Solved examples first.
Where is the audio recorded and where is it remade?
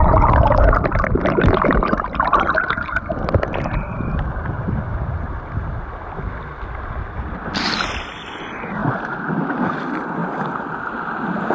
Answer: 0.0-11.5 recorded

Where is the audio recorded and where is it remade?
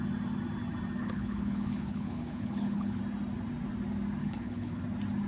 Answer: 0.0-1.0 recorded; 1.0-3.0 remade; 3.0-4.2 recorded; 4.2-4.8 remade; 4.8-5.3 recorded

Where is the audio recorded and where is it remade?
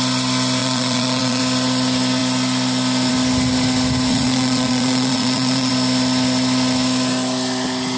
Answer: 0.0-0.6 recorded; 0.6-1.4 remade; 1.4-4.1 recorded; 4.1-5.7 remade; 5.7-8.0 recorded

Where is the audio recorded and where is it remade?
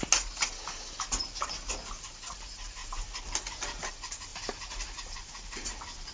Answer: 0.0-6.1 recorded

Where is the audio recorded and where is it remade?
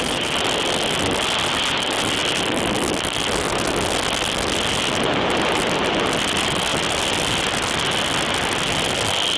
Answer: 0.0-9.4 recorded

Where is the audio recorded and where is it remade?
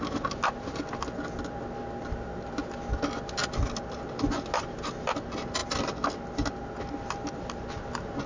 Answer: 0.0-8.3 recorded